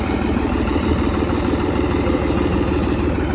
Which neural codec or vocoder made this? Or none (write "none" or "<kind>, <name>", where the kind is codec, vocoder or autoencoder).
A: vocoder, BigVGAN v2